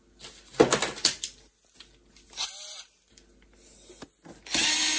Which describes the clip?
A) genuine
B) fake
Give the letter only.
A